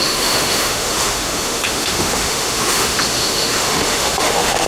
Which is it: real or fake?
fake